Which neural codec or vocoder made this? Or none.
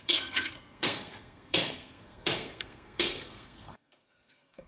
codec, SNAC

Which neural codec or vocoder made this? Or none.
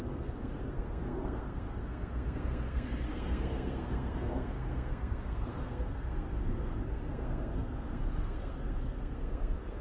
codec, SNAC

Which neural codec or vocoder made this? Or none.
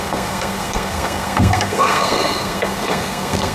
codec, SNAC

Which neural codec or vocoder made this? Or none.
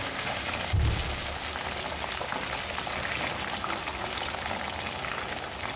none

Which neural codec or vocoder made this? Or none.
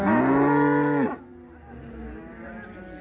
none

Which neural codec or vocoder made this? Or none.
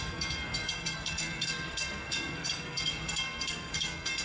codec, SNAC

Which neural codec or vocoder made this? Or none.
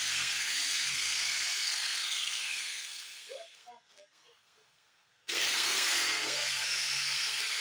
codec, SNAC